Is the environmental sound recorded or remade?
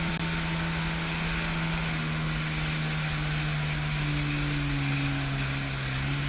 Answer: recorded